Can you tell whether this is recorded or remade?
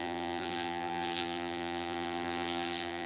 remade